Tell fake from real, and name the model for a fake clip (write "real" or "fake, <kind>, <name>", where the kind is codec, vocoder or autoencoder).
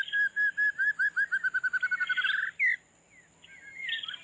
real